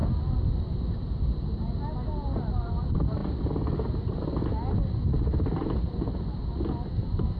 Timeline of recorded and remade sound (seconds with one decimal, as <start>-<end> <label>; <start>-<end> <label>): 0.0-7.4 recorded